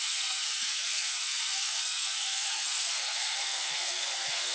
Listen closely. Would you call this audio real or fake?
fake